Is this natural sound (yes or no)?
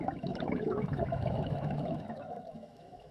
no